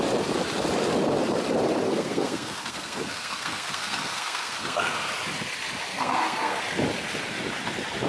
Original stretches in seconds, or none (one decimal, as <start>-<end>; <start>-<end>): 0.0-1.9; 5.1-5.9; 6.6-8.1